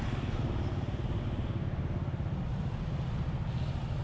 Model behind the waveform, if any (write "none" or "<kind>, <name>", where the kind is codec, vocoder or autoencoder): none